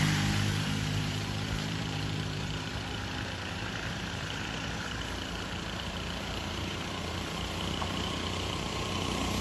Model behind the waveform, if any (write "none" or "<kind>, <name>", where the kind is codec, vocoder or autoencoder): vocoder, BigVGAN v2